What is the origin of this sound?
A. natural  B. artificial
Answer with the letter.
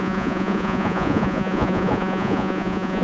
B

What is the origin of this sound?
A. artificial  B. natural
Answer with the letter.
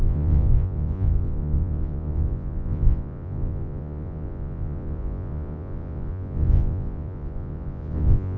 A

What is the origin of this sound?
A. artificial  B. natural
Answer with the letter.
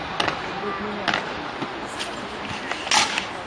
B